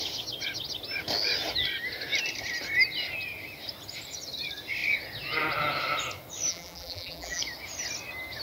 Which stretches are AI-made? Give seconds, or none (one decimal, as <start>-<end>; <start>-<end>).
6.5-7.4